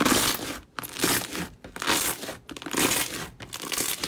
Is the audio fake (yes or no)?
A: no